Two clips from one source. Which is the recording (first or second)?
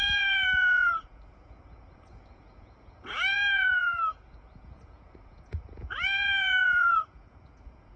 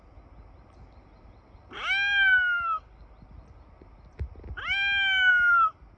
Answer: second